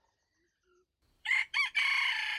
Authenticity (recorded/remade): remade